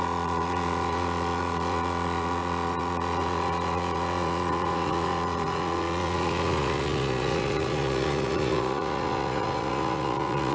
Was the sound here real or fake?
fake